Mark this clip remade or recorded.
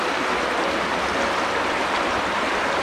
recorded